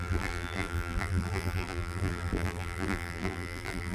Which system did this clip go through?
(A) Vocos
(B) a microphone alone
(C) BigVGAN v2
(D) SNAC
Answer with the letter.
C